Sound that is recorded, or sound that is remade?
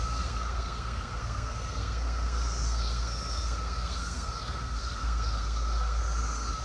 remade